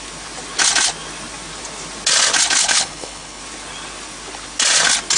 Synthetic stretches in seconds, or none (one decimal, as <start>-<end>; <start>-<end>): 2.6-3.4